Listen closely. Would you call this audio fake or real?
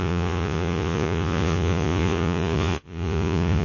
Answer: fake